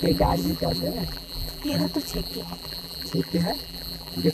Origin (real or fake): fake